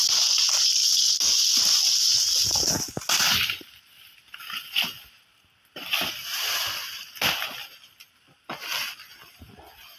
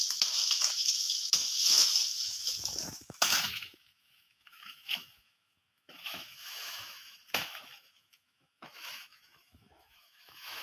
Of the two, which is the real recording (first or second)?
first